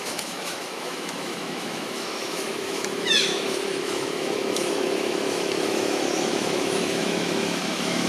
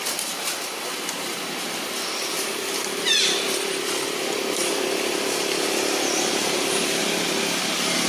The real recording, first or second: second